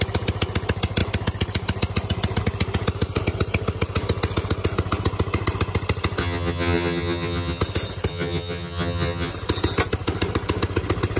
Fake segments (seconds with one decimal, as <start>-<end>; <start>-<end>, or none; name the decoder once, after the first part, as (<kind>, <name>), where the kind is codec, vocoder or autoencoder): 6.2-7.6 (vocoder, HiFi-GAN); 8.1-9.3